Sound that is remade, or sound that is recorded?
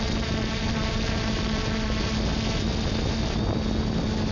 recorded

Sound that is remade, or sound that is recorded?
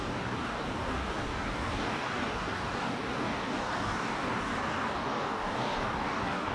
remade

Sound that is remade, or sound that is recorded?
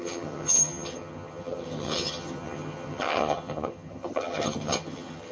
remade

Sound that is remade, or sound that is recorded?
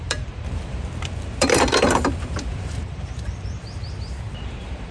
remade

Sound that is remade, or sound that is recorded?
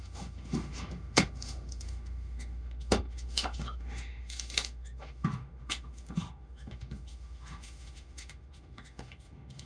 remade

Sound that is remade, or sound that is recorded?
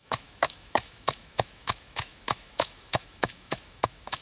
remade